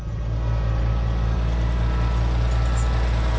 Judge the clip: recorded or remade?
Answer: recorded